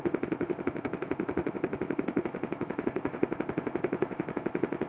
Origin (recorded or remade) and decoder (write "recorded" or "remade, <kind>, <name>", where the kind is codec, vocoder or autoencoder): remade, codec, ZipCodec